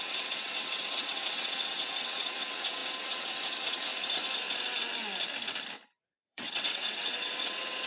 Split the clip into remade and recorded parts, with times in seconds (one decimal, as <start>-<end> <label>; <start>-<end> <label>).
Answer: 0.0-3.9 remade; 3.9-6.0 recorded; 6.0-7.9 remade